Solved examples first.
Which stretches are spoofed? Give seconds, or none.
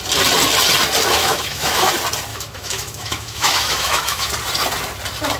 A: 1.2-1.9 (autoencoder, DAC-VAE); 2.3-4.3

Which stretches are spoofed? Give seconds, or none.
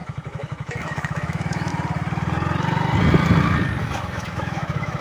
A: 0.0-1.7 (autoencoder, DAC-VAE); 3.8-5.0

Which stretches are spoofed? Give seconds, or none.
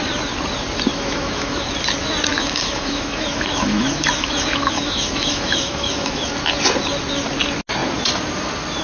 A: 0.9-1.7 (autoencoder, DAC-VAE); 2.3-6.3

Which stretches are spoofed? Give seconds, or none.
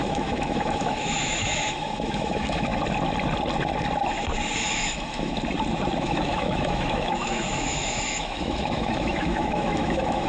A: 0.0-2.7 (autoencoder, DAC-VAE); 4.6-5.3; 6.0-10.3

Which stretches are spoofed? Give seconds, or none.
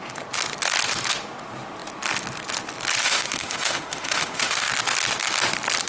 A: 3.0-4.7 (autoencoder, DAC-VAE)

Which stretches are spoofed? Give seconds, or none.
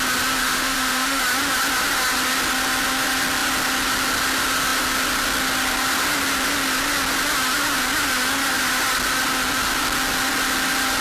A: 0.4-1.2 (autoencoder, DAC-VAE)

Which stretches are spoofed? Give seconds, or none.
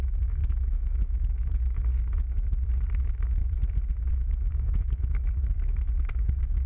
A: 0.0-1.9 (autoencoder, DAC-VAE); 2.9-3.4; 4.1-6.7